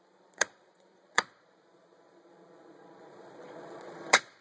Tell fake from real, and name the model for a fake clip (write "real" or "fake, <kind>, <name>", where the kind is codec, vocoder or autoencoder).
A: fake, vocoder, Vocos